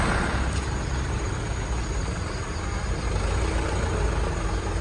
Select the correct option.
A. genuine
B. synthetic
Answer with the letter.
A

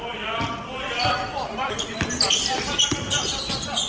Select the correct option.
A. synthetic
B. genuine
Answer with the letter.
A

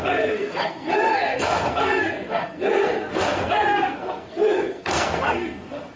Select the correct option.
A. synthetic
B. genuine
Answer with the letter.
A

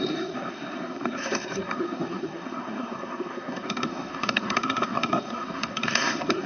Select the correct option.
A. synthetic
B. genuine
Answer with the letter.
A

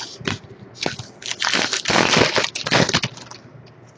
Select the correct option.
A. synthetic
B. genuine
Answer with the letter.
B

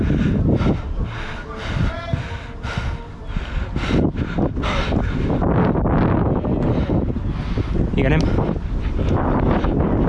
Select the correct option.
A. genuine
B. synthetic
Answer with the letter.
A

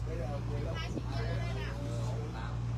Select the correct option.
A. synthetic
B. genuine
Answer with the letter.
B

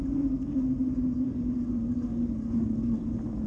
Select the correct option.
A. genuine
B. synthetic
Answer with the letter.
A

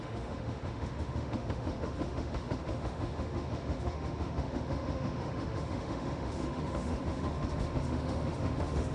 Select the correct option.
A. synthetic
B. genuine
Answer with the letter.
A